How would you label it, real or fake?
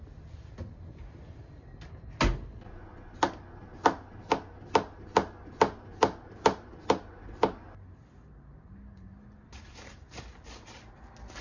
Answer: real